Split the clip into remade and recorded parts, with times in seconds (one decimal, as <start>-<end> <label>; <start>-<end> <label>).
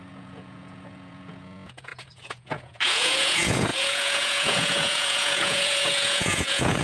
0.0-6.8 remade